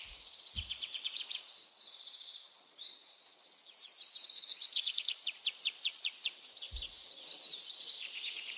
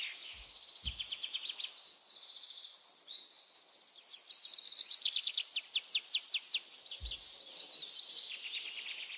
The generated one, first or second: first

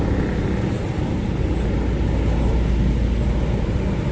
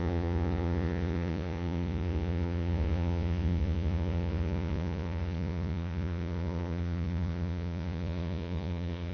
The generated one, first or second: second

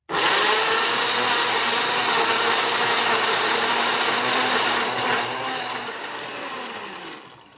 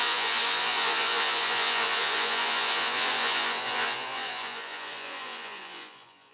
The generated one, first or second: second